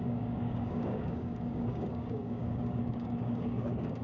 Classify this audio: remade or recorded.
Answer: remade